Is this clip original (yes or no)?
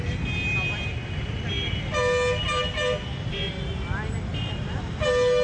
yes